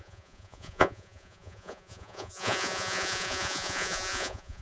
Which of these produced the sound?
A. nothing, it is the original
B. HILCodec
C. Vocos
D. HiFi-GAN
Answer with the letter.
C